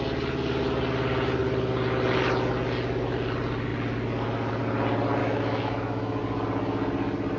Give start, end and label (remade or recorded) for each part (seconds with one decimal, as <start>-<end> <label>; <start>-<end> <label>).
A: 0.0-5.2 recorded; 5.2-6.2 remade; 6.2-7.4 recorded